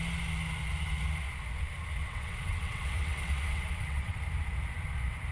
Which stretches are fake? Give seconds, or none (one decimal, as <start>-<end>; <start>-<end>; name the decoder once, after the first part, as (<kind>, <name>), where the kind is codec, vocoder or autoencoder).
2.0-4.2 (vocoder, WaveNeXt)